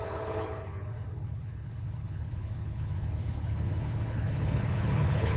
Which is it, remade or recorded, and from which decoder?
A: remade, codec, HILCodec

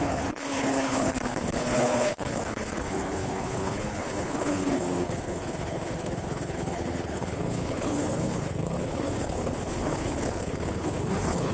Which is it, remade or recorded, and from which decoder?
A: remade, codec, HILCodec